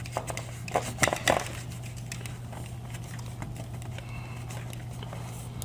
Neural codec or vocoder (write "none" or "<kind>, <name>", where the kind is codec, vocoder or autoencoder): none